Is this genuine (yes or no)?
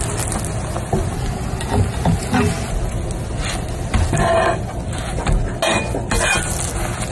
yes